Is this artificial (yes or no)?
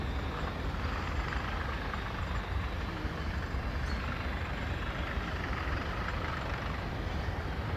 yes